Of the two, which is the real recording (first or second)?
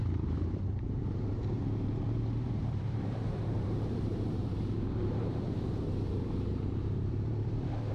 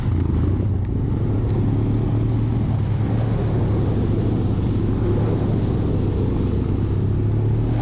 second